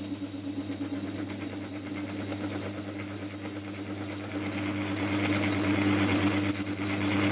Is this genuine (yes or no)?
yes